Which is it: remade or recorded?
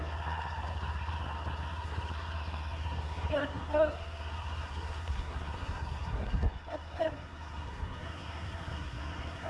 remade